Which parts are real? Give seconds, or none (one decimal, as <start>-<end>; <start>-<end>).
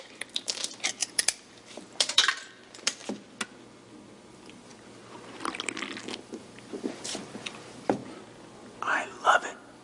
3.0-4.3; 4.7-6.0; 8.0-9.2